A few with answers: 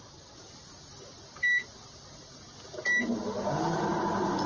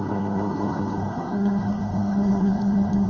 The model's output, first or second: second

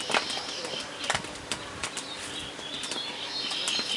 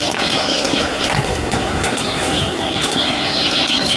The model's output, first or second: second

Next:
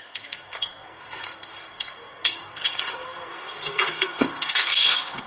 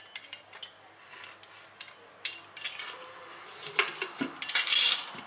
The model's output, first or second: first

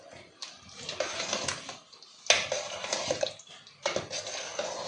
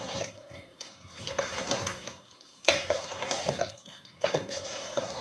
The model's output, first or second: second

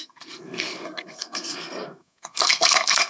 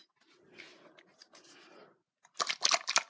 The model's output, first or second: first